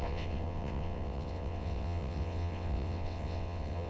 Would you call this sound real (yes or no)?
no